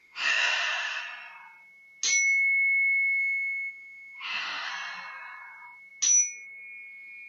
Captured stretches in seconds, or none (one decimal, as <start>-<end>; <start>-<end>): 1.0-3.2; 4.7-7.3